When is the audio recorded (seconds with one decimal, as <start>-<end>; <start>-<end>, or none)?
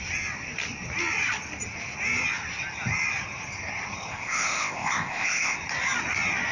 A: 0.0-4.1; 5.6-6.5